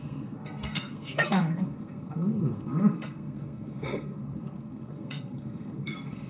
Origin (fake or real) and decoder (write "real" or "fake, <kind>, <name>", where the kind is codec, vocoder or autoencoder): fake, codec, SNAC